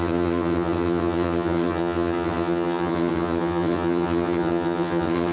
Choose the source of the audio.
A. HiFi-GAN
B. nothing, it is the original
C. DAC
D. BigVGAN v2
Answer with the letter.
A